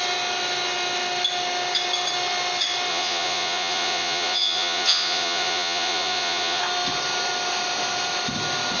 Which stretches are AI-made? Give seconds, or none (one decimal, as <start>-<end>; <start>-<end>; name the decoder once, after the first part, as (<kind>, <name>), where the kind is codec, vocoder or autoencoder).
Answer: 2.9-6.6 (vocoder, Vocos)